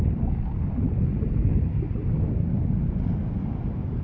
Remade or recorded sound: recorded